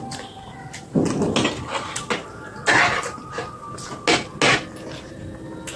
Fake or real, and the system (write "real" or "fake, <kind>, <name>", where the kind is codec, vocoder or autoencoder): real